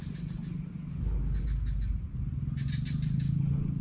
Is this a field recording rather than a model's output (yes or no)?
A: yes